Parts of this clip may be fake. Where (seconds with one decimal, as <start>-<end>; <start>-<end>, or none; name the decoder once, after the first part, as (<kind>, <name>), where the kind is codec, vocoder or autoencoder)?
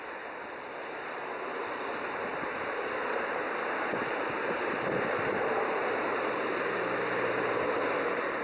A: 0.0-8.4 (vocoder, BigVGAN v2)